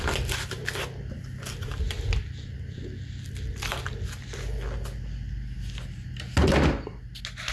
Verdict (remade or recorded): recorded